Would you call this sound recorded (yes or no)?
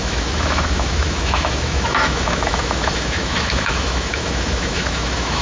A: no